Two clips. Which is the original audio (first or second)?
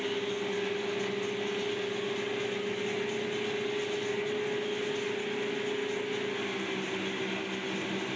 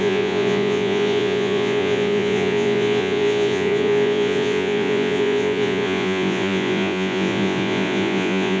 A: first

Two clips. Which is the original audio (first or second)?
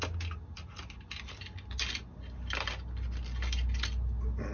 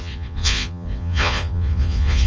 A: first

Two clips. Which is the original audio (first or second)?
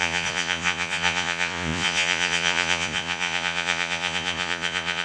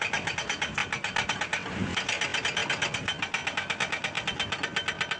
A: second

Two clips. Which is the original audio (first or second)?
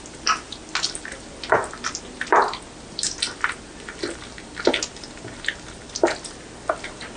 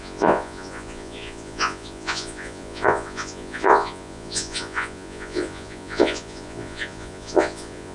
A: first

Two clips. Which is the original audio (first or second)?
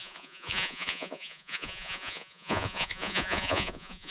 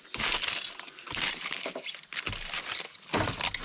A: second